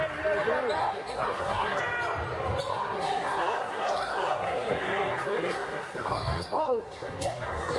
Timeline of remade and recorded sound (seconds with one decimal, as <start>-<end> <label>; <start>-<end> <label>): 0.0-0.8 recorded; 0.8-1.8 remade; 1.8-2.7 recorded; 2.7-7.8 remade